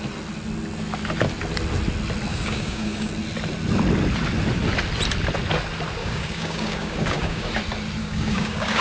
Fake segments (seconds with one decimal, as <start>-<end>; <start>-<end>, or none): 2.3-3.1; 6.0-7.5; 8.0-8.8